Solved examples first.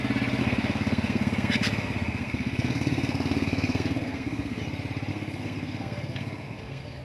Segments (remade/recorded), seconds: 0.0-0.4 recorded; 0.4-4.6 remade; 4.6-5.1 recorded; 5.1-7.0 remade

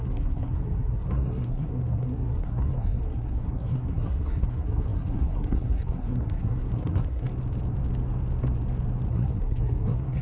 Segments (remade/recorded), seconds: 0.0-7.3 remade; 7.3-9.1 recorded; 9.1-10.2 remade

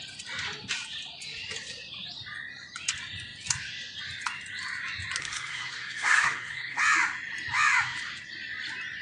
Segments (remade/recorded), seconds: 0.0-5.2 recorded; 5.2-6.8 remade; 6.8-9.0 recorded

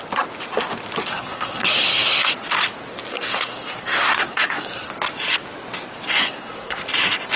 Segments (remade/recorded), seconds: 0.0-1.1 recorded; 1.1-2.3 remade; 2.3-3.1 recorded; 3.1-4.9 remade; 4.9-6.2 recorded; 6.2-6.8 remade; 6.8-7.4 recorded

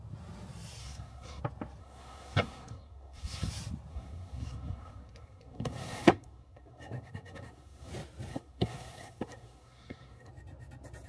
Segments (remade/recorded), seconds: 0.0-0.8 recorded; 0.8-1.4 remade; 1.4-1.8 recorded; 1.8-3.5 remade; 3.5-3.9 recorded; 3.9-7.9 remade; 7.9-8.3 recorded; 8.3-10.3 remade; 10.3-11.1 recorded